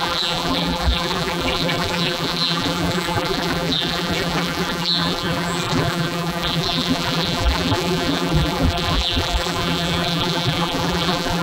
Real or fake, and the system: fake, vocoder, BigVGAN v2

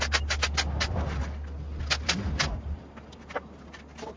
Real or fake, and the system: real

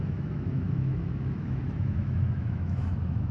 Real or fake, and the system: fake, autoencoder, DAC-VAE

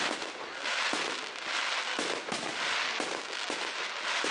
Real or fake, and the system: real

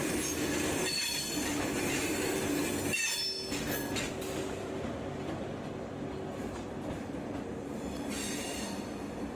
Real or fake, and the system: real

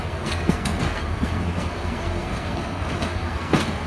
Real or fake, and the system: fake, codec, SNAC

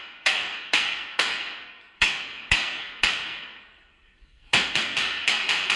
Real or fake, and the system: fake, codec, SNAC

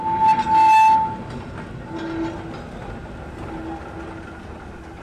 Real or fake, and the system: real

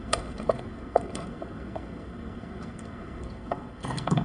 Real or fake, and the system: fake, codec, SNAC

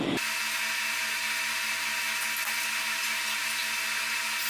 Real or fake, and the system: real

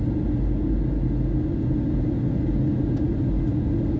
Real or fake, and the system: real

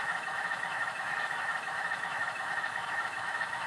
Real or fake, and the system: fake, autoencoder, DAC-VAE